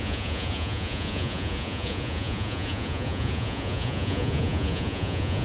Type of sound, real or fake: fake